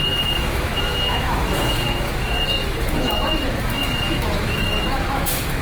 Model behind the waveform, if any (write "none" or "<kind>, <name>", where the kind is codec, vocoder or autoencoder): autoencoder, DAC-VAE